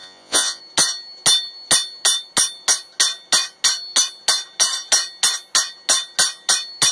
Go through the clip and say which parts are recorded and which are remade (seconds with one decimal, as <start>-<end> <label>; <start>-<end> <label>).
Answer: 0.0-0.6 remade; 0.6-6.9 recorded